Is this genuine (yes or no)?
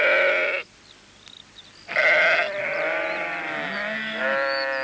yes